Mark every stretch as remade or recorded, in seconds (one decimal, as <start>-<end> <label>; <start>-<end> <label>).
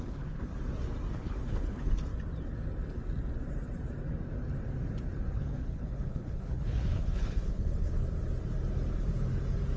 0.0-0.5 remade; 0.5-1.1 recorded; 1.1-2.1 remade; 2.1-5.3 recorded; 5.3-8.0 remade; 8.0-9.8 recorded